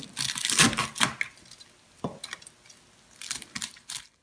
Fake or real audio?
real